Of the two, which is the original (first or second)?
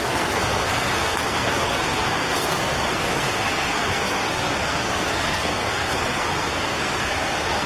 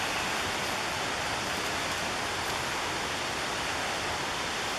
second